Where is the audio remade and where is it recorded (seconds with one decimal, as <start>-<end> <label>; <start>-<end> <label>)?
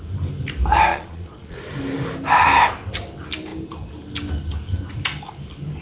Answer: 0.0-0.9 recorded; 0.9-1.6 remade; 1.6-5.8 recorded